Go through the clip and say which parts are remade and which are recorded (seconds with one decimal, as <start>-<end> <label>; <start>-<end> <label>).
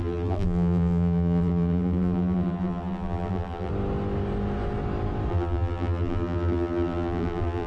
0.0-3.7 remade; 3.7-5.3 recorded; 5.3-7.7 remade